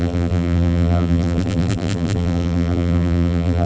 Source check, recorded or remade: remade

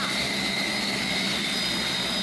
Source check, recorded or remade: recorded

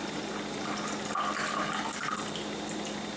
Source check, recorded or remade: recorded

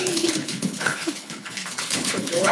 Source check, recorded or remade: remade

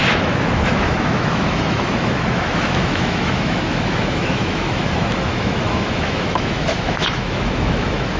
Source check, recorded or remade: remade